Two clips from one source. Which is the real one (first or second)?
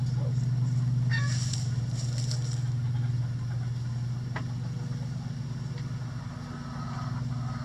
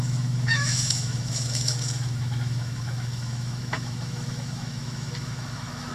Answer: first